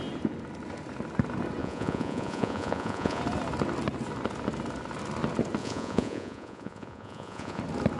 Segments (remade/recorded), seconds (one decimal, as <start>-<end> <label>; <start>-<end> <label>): 0.0-1.6 recorded; 1.6-3.2 remade; 3.2-5.6 recorded; 5.6-7.6 remade; 7.6-8.0 recorded